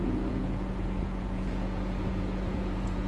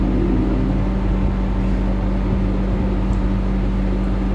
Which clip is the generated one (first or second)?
first